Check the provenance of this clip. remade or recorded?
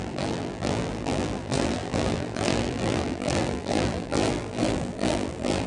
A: remade